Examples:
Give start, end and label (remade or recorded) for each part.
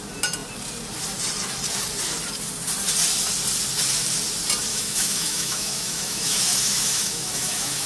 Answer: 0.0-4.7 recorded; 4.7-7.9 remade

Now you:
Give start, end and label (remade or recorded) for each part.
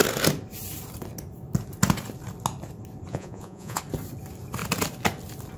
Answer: 0.0-3.1 recorded; 3.1-3.8 remade; 3.8-5.6 recorded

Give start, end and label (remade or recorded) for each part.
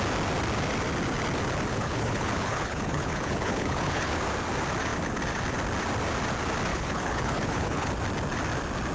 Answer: 0.0-1.7 recorded; 1.7-4.2 remade; 4.2-6.7 recorded; 6.7-7.9 remade; 7.9-8.9 recorded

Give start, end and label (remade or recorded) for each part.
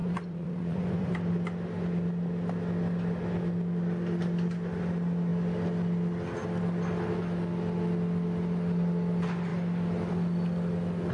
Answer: 0.0-1.1 remade; 1.1-11.1 recorded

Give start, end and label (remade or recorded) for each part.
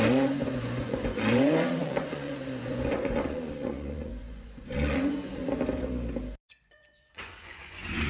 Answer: 0.0-5.4 remade; 5.4-6.4 recorded; 6.4-8.1 remade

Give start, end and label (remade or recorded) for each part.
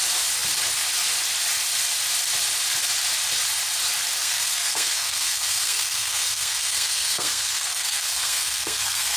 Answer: 0.0-4.2 recorded; 4.2-9.2 remade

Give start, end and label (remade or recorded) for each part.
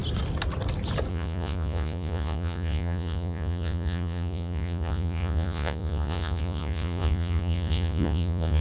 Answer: 0.0-1.1 recorded; 1.1-8.6 remade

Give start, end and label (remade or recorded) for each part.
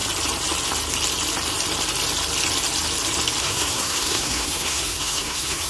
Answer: 0.0-3.4 recorded; 3.4-5.7 remade